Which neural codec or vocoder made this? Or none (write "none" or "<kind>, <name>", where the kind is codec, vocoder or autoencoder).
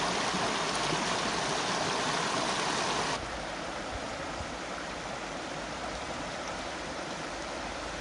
none